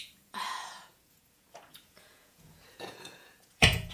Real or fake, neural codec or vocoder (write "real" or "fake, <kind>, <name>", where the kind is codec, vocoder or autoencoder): fake, vocoder, Vocos